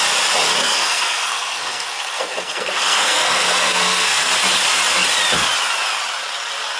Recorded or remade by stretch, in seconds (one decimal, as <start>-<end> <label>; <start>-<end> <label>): 0.0-0.6 recorded; 0.6-4.3 remade; 4.3-6.8 recorded